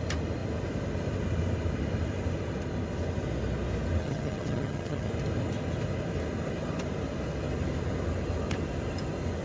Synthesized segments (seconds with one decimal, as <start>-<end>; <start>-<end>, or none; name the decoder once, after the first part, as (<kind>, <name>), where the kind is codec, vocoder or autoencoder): 4.0-5.1 (vocoder, HiFi-GAN)